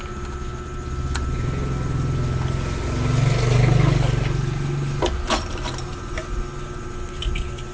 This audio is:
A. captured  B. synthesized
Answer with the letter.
A